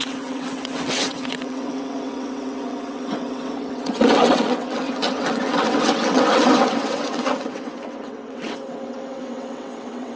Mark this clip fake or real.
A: fake